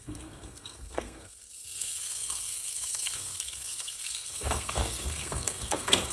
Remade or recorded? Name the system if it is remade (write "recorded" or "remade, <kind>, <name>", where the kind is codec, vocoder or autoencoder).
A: remade, codec, SNAC